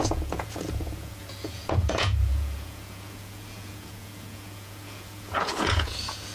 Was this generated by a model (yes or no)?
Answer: yes